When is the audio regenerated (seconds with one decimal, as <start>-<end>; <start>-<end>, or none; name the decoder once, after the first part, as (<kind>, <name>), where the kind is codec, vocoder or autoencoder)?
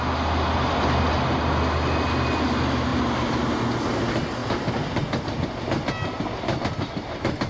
2.9-3.5 (vocoder, BigVGAN v2)